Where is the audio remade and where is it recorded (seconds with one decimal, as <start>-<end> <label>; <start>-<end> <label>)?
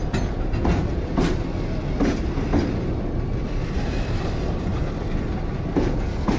0.0-3.6 recorded; 3.6-4.3 remade; 4.3-6.4 recorded